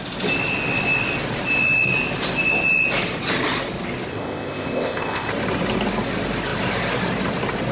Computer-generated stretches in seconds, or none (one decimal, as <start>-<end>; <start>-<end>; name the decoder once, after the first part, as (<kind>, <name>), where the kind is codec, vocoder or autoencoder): 4.1-5.3 (codec, ZipCodec)